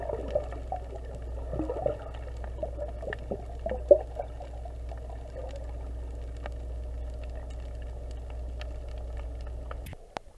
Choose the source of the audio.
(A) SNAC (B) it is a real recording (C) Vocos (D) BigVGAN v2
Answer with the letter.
B